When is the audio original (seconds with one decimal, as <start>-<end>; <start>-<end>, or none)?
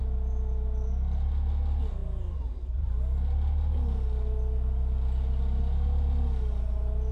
0.0-7.1